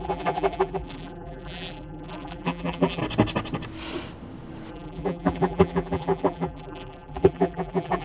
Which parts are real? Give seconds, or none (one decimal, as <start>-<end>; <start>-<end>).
3.0-4.7